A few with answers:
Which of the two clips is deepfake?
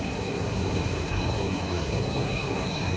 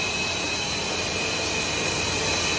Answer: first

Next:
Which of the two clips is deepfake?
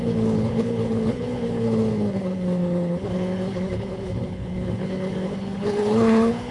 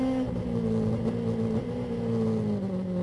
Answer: first